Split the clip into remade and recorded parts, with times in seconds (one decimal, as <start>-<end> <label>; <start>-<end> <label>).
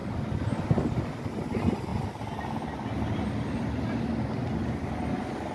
0.0-5.5 recorded